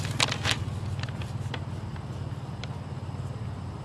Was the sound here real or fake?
real